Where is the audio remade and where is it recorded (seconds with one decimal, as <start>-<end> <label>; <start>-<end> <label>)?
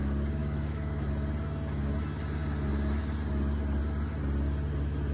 0.0-0.4 recorded; 0.4-1.1 remade; 1.1-5.1 recorded